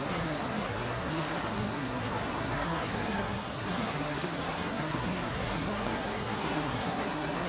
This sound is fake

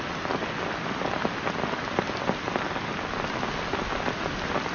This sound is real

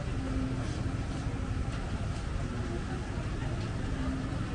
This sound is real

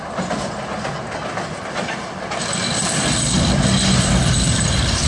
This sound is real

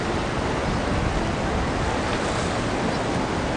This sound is real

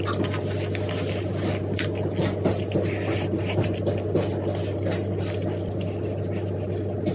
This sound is real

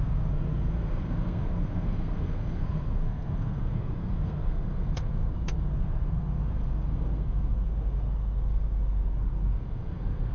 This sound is fake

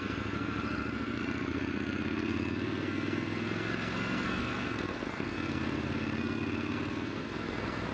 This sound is fake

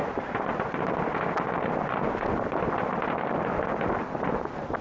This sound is real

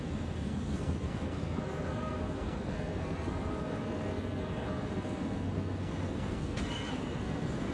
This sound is fake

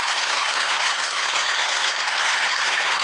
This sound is fake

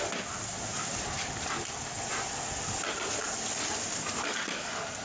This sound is real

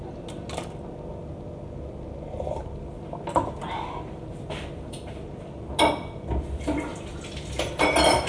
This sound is real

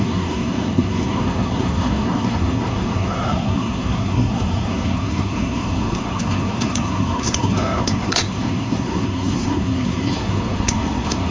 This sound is fake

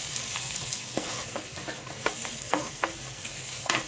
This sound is fake